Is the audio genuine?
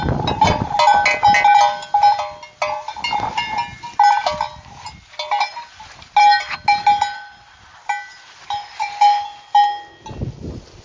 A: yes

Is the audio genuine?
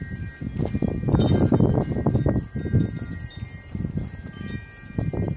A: yes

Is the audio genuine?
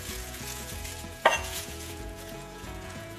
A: no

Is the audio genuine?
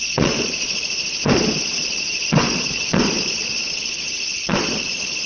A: no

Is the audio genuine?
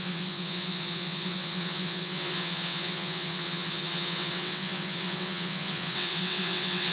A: no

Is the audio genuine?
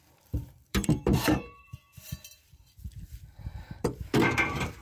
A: no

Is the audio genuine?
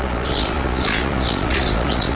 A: no